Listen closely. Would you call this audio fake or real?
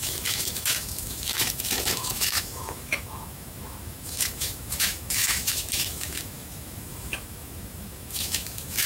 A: fake